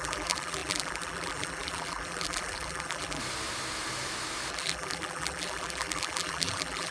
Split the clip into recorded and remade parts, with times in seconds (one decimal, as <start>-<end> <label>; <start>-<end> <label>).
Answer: 0.0-3.2 remade; 3.2-4.5 recorded; 4.5-6.9 remade